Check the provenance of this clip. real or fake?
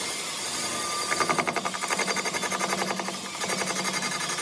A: real